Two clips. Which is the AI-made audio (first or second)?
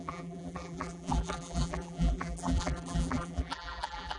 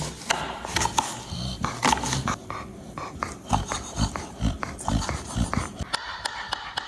first